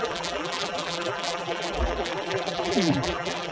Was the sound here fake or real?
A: fake